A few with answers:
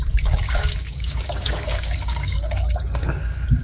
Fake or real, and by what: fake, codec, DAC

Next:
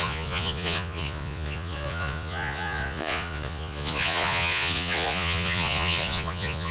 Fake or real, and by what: fake, vocoder, Vocos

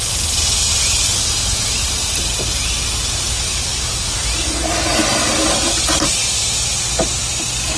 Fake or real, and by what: real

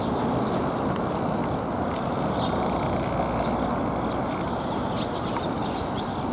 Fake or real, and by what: real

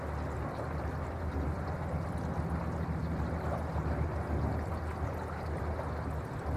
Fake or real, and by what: real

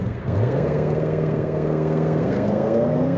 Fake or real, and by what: fake, codec, SNAC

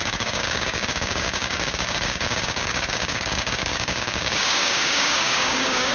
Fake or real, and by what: fake, codec, DAC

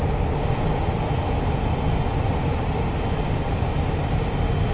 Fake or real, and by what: real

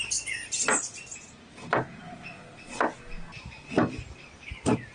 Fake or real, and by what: real